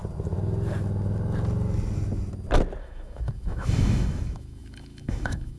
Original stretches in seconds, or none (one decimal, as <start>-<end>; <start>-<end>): 0.0-2.8